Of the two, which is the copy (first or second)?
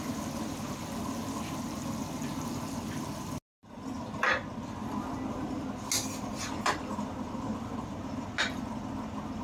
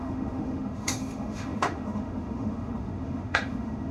second